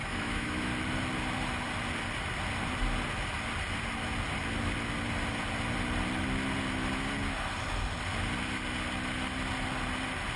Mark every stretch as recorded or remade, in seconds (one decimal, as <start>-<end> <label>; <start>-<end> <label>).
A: 0.0-0.7 remade; 0.7-10.4 recorded